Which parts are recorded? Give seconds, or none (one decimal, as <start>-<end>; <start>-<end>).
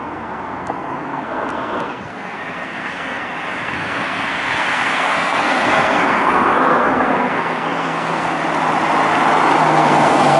8.4-9.6